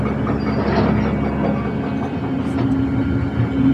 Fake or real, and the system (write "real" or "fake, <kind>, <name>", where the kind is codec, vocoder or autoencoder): real